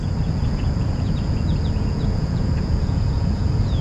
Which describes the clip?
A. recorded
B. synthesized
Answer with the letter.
B